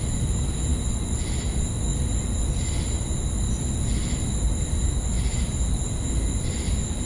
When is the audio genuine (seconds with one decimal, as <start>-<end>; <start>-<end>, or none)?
0.0-7.0